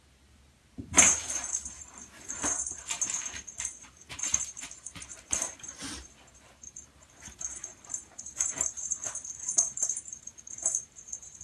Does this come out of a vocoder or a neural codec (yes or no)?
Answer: yes